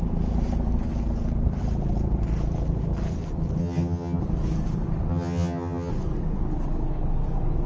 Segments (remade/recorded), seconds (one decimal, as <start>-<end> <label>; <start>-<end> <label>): 0.0-3.6 recorded; 3.6-4.2 remade; 4.2-5.1 recorded; 5.1-5.9 remade; 5.9-7.7 recorded